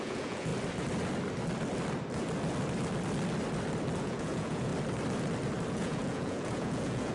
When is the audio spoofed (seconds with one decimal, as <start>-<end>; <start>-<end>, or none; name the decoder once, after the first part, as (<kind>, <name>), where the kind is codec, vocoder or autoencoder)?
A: 0.0-0.5 (vocoder, Vocos); 4.0-4.7; 5.7-7.1